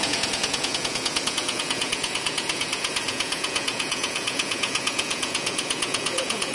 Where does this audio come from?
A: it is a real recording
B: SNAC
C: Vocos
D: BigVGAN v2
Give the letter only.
C